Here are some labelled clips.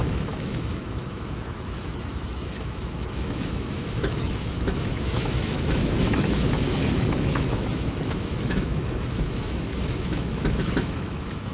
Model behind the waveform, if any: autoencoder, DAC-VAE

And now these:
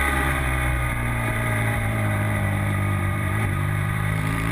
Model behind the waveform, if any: vocoder, BigVGAN v2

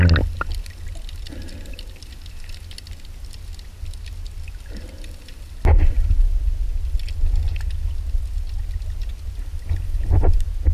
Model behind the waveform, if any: none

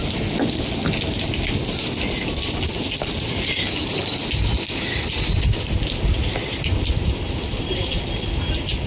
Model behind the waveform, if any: none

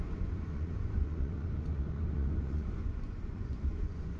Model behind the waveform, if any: vocoder, Vocos